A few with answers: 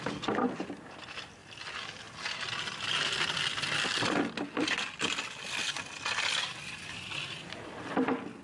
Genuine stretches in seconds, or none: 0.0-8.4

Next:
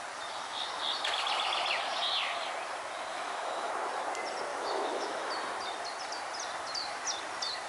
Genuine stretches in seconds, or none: 0.0-3.1; 3.7-4.5; 5.3-7.7

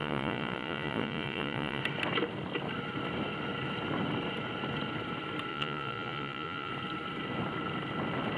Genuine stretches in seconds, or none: 1.8-5.5; 6.7-8.4

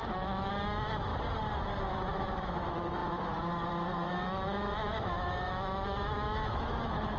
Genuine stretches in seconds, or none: 1.1-1.9